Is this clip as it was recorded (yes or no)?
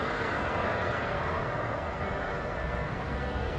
no